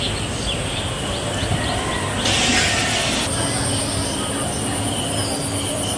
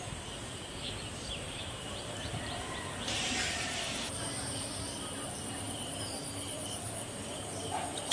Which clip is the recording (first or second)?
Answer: first